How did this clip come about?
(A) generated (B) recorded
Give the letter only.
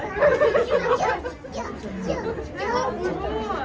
B